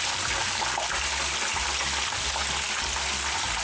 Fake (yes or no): no